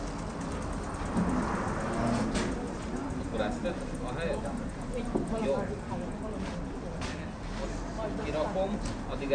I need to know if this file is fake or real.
real